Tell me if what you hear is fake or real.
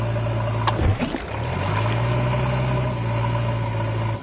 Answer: real